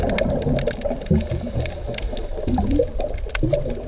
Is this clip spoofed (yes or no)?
no